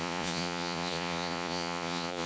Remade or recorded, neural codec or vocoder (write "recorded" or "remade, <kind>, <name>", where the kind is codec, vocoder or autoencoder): remade, vocoder, Vocos